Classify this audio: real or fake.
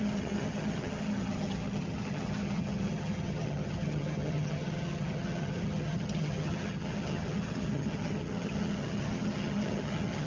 fake